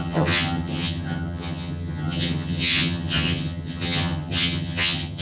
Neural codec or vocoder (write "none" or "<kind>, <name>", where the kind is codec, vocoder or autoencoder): vocoder, HiFi-GAN